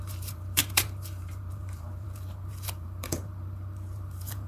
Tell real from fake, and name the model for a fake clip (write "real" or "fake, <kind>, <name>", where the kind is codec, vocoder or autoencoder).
fake, vocoder, BigVGAN v2